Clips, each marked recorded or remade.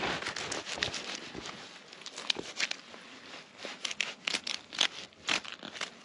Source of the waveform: recorded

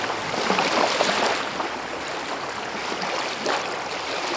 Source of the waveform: recorded